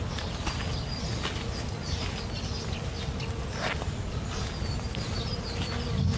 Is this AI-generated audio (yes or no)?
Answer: no